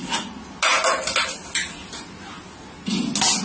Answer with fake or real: real